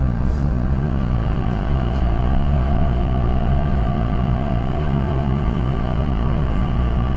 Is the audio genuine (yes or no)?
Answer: no